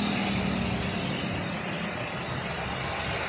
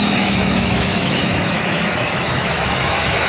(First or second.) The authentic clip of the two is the first